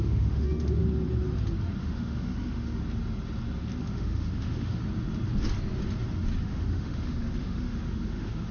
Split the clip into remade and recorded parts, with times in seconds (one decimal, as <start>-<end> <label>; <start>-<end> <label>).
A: 0.0-0.8 remade; 0.8-1.8 recorded; 1.8-2.8 remade; 2.8-3.8 recorded; 3.8-4.8 remade; 4.8-6.5 recorded; 6.5-8.5 remade